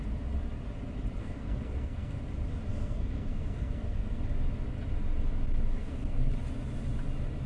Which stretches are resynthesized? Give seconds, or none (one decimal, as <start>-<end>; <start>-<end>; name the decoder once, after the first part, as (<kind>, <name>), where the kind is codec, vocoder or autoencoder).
1.2-2.2 (codec, SNAC); 2.7-4.2; 5.8-6.3